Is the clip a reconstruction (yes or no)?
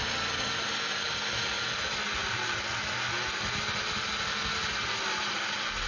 no